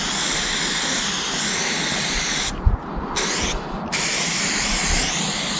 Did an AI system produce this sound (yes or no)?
no